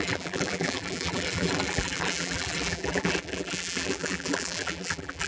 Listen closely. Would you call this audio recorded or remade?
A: remade